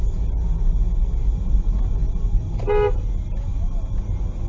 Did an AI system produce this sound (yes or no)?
no